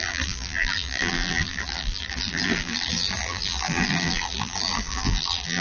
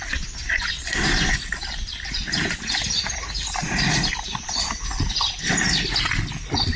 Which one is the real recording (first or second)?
second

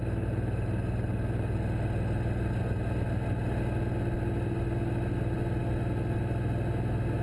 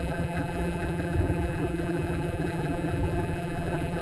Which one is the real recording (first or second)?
first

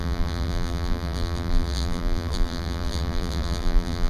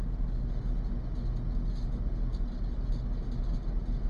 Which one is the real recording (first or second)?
second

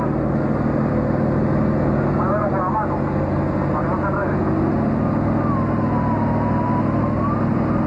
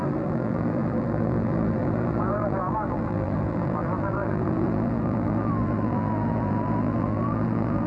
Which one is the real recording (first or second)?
first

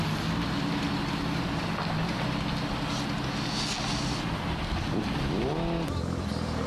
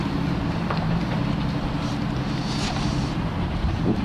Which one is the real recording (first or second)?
first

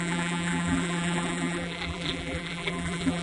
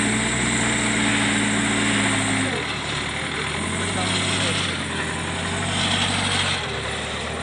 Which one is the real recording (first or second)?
second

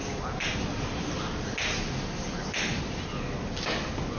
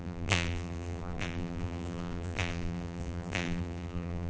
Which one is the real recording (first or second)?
first